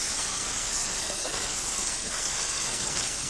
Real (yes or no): no